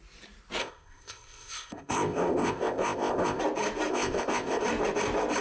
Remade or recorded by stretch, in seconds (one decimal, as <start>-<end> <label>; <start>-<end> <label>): 0.0-0.6 recorded; 0.6-3.4 remade; 3.4-3.9 recorded; 3.9-4.6 remade; 4.6-5.4 recorded